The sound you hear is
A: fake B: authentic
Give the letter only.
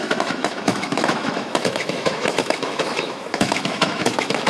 A